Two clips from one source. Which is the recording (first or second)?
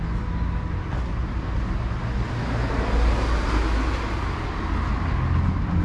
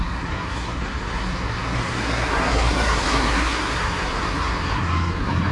first